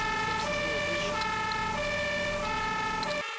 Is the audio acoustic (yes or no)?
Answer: yes